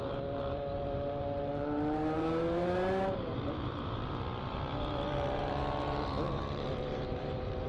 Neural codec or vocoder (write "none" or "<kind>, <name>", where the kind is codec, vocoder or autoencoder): vocoder, BigVGAN v2